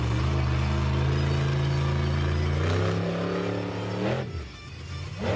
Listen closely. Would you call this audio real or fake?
real